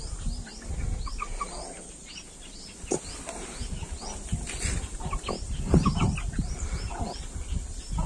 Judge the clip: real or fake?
real